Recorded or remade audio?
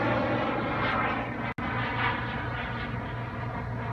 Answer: recorded